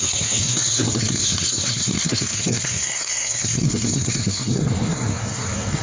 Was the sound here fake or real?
fake